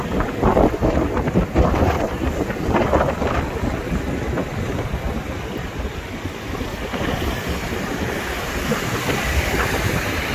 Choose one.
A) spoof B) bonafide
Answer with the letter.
A